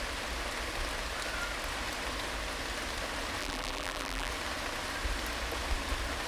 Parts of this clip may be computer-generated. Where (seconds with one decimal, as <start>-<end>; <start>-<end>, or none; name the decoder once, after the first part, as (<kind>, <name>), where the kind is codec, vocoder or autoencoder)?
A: 3.4-4.3 (vocoder, BigVGAN v2)